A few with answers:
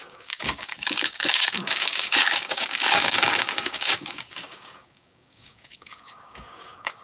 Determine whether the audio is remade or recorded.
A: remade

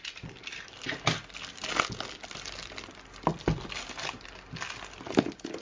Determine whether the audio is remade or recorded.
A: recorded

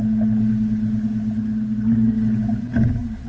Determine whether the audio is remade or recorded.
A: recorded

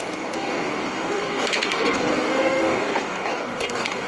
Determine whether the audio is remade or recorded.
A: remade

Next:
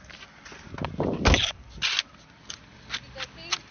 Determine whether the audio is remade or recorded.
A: recorded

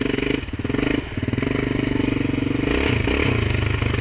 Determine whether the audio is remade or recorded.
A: recorded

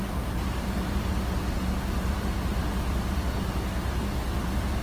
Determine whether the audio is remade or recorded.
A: recorded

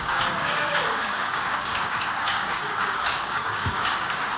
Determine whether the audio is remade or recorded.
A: remade